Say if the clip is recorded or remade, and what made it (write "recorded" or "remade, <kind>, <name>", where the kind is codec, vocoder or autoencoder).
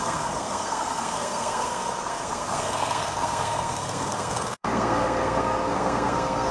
remade, codec, SNAC